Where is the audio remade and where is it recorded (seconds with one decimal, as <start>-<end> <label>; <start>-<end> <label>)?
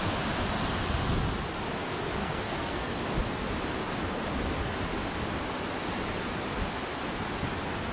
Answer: 0.0-2.2 recorded; 2.2-3.0 remade; 3.0-7.9 recorded